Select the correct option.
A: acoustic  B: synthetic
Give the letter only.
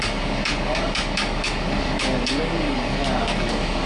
B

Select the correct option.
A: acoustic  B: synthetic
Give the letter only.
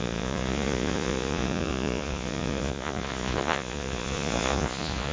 B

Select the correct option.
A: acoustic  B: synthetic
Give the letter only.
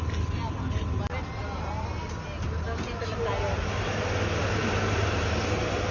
A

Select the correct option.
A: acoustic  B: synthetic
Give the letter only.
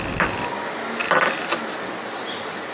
A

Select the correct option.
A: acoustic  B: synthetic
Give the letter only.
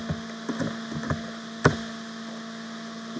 A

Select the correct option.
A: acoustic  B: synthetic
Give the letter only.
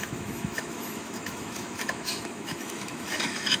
B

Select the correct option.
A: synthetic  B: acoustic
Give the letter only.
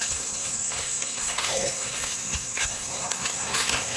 A